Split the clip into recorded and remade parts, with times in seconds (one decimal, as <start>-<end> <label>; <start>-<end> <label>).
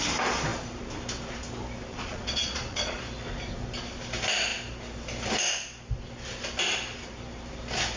0.0-1.9 recorded; 1.9-3.0 remade; 3.0-8.0 recorded